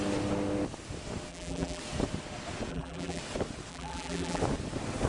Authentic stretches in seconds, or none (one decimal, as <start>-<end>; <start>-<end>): 0.0-1.3; 1.8-2.7; 3.2-3.7; 4.4-5.1